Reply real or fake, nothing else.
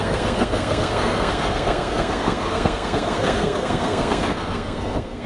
fake